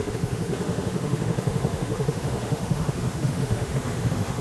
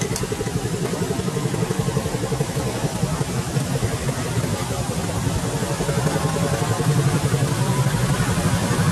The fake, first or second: first